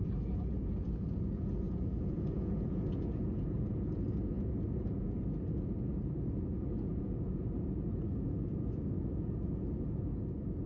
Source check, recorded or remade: remade